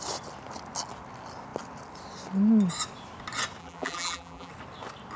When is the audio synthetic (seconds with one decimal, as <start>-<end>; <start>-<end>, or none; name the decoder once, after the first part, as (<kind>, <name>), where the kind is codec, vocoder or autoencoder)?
3.6-4.5 (vocoder, BigVGAN v2)